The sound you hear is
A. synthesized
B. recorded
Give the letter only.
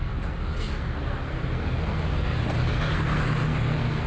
A